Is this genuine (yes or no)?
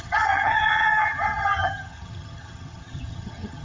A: no